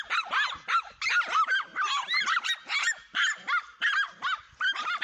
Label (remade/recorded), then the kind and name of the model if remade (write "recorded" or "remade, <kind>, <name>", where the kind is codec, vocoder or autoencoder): recorded